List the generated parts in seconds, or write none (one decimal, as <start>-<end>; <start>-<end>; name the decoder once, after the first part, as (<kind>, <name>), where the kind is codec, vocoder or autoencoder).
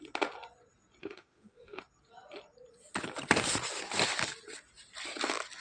1.0-1.8 (autoencoder, DAC-VAE)